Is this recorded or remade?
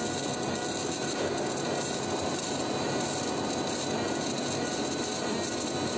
recorded